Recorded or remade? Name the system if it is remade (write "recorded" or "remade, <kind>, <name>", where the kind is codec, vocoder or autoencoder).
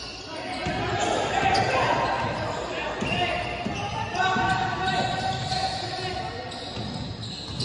recorded